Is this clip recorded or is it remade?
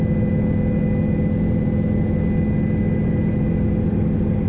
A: recorded